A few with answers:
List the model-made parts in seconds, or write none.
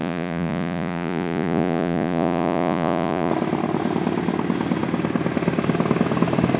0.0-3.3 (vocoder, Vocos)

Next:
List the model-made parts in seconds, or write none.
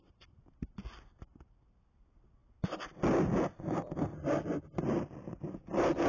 none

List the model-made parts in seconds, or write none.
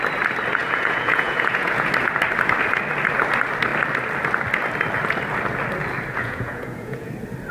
0.6-1.9 (vocoder, Vocos); 6.1-7.1